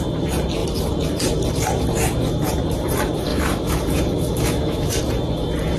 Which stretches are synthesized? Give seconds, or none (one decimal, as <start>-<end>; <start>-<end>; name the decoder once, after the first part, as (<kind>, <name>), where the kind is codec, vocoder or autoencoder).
3.3-5.0 (autoencoder, DAC-VAE)